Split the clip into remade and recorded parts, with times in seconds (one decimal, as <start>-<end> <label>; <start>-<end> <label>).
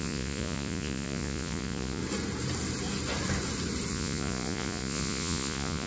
0.0-2.0 remade; 2.0-3.9 recorded; 3.9-5.9 remade